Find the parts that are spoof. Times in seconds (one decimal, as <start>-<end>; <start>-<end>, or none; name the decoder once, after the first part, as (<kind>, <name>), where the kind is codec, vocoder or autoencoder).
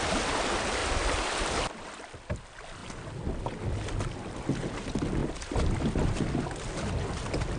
none